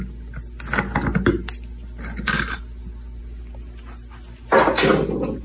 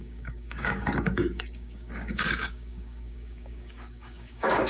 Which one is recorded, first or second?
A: first